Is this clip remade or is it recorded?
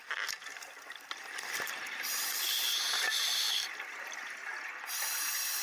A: recorded